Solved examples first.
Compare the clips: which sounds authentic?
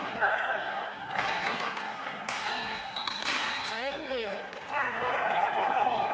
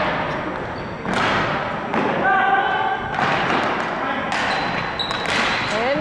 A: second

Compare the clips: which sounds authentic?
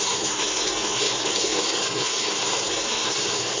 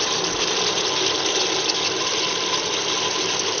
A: second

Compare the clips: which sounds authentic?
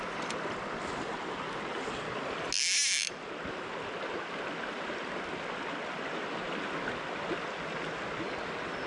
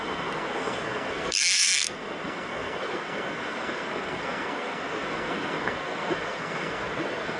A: first